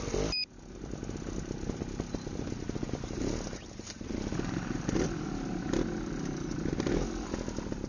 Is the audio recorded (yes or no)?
yes